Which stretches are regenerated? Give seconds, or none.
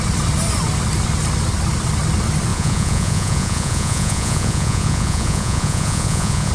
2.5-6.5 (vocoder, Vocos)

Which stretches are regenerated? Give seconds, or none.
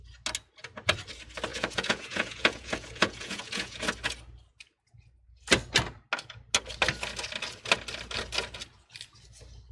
1.5-3.8 (vocoder, Vocos)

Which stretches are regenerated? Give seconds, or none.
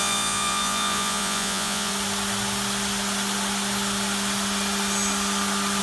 0.0-1.9 (vocoder, Vocos)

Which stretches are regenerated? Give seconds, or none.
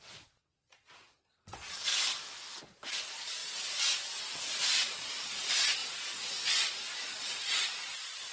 0.0-1.9 (vocoder, Vocos); 2.6-3.4; 4.4-8.3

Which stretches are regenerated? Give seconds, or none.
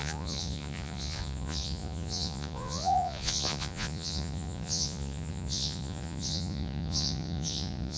0.0-8.0 (vocoder, Vocos)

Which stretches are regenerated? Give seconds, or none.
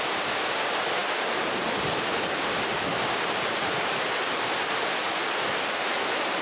none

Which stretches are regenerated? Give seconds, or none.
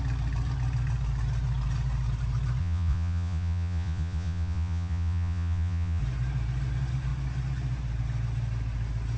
2.6-6.0 (vocoder, Vocos)